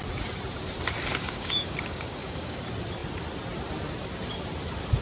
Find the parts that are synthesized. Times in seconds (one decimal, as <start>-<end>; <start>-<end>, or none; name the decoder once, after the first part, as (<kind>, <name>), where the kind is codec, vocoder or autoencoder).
1.1-2.6 (codec, DAC)